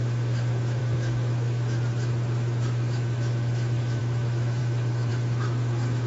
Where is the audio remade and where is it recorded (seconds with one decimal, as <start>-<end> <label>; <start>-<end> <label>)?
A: 0.0-6.1 remade